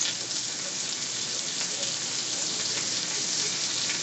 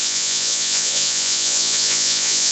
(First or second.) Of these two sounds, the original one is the first